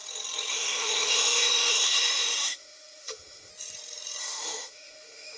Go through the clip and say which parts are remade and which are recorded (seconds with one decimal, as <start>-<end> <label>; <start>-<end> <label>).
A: 0.0-0.5 recorded; 0.5-3.5 remade; 3.5-4.2 recorded; 4.2-5.4 remade